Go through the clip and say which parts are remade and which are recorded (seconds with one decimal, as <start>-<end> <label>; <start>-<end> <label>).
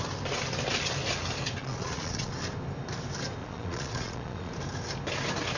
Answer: 0.0-1.6 recorded; 1.6-2.3 remade; 2.3-3.4 recorded; 3.4-4.5 remade; 4.5-5.6 recorded